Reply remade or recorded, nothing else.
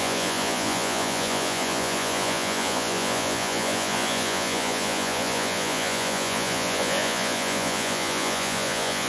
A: remade